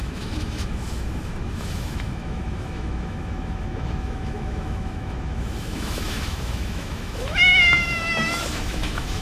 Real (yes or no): no